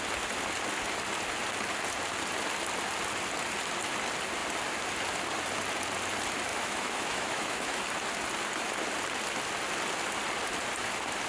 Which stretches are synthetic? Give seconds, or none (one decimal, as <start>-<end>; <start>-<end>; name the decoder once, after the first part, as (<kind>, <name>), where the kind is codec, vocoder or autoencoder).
6.5-7.8 (autoencoder, DAC-VAE)